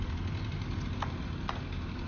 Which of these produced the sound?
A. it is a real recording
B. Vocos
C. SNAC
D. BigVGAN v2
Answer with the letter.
A